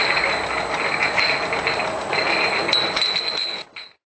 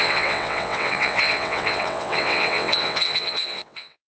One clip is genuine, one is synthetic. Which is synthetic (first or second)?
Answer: second